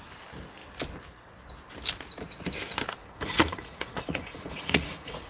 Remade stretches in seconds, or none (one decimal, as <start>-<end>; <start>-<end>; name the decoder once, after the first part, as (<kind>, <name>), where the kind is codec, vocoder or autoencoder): 3.0-5.3 (vocoder, Vocos)